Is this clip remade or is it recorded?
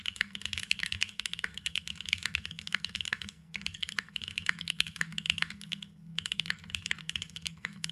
remade